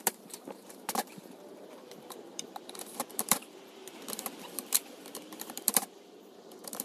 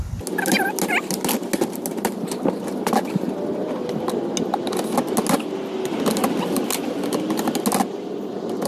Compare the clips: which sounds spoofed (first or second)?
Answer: first